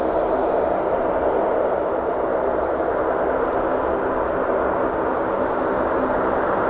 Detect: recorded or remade recorded